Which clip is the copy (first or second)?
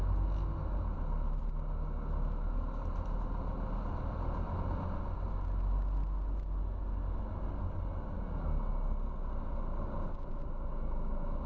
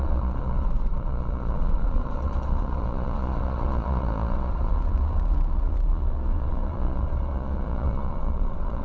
second